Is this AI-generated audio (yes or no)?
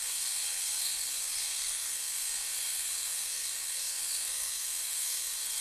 yes